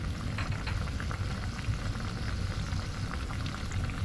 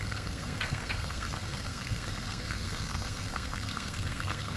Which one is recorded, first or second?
first